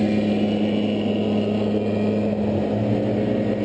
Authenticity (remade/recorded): recorded